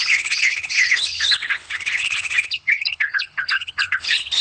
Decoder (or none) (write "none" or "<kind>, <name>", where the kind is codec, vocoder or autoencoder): codec, HILCodec